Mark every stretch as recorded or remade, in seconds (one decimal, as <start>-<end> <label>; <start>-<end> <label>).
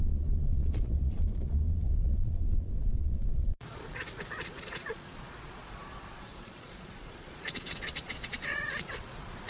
0.0-9.5 remade